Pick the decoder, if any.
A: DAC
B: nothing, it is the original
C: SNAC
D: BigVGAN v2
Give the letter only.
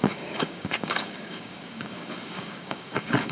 A